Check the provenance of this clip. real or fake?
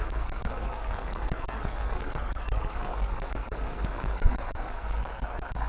fake